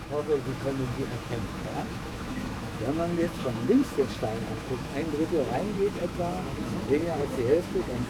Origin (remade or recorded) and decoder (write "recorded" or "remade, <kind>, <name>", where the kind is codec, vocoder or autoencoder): remade, autoencoder, DAC-VAE